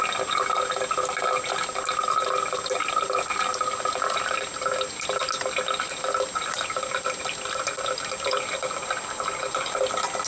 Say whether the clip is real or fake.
real